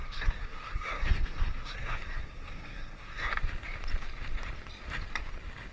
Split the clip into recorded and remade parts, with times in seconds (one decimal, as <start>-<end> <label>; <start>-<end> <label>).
0.0-3.3 remade; 3.3-5.7 recorded